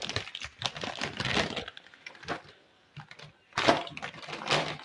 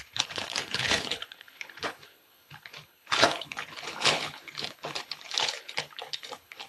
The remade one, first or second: second